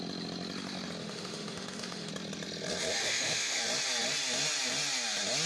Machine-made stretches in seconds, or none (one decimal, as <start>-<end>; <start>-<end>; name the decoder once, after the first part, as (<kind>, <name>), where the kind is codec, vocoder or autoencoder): 1.0-2.1 (autoencoder, DAC-VAE); 3.0-3.6